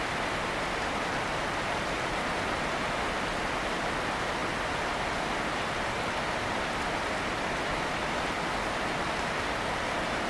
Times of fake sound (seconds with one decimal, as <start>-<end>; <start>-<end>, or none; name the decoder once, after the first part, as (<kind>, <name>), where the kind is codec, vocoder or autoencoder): none